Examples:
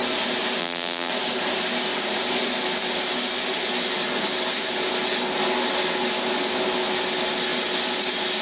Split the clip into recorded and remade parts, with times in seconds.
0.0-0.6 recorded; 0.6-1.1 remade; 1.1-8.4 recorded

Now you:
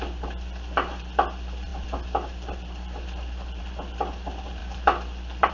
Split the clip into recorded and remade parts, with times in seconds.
0.0-5.5 remade

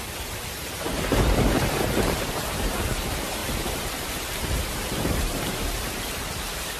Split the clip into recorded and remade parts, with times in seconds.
0.0-6.8 remade